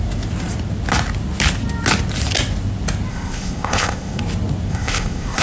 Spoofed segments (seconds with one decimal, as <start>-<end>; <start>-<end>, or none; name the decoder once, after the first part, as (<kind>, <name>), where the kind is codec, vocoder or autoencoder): 3.1-4.2 (codec, ZipCodec); 4.7-5.4